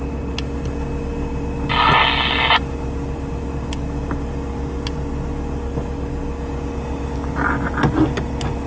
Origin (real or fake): real